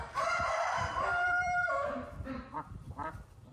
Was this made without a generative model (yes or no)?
no